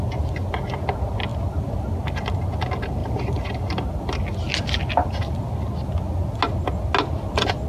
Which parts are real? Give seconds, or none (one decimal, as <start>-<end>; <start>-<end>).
0.0-7.7